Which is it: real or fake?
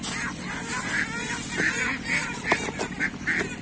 real